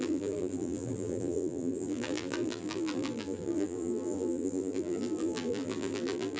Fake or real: fake